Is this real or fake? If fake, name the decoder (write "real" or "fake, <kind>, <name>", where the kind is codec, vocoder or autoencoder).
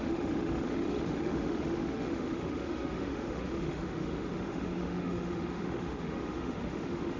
fake, autoencoder, DAC-VAE